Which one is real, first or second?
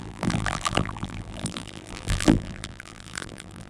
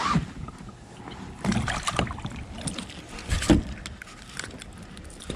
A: second